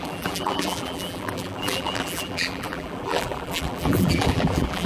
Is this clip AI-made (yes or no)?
yes